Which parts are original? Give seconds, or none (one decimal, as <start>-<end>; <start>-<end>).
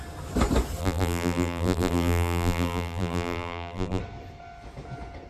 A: 0.0-0.8; 4.0-5.3